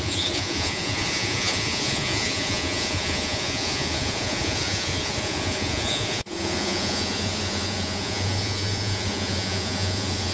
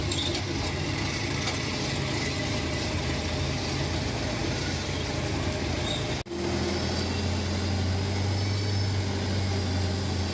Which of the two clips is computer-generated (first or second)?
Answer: first